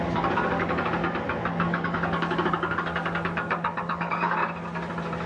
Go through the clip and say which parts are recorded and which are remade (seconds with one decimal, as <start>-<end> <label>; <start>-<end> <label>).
0.0-1.0 remade; 1.0-1.5 recorded; 1.5-4.4 remade; 4.4-5.3 recorded